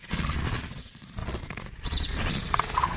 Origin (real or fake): fake